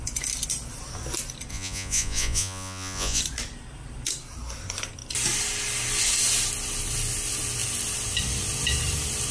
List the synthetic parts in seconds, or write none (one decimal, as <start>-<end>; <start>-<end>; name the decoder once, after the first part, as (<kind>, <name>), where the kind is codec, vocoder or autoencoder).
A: 1.5-3.2 (vocoder, Vocos)